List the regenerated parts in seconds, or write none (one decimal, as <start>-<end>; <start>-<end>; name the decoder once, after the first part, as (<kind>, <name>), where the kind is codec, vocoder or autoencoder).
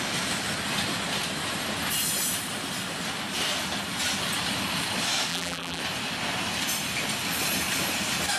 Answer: 5.3-5.8 (vocoder, BigVGAN v2)